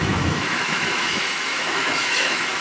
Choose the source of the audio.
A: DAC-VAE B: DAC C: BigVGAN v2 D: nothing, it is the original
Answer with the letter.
A